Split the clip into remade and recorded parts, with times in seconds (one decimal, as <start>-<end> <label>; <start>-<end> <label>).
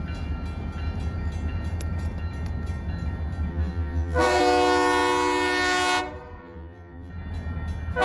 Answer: 0.0-3.5 recorded; 3.5-4.4 remade; 4.4-6.4 recorded; 6.4-7.1 remade; 7.1-8.0 recorded